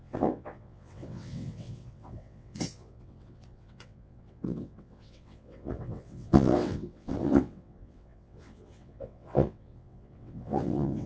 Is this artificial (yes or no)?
yes